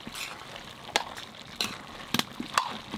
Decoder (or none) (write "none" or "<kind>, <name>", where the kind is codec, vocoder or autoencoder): none